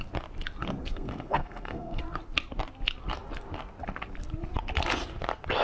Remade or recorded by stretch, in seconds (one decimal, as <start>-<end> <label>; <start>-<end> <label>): 0.0-0.8 recorded; 0.8-2.0 remade; 2.0-5.6 recorded